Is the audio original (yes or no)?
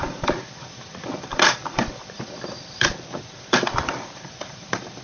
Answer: no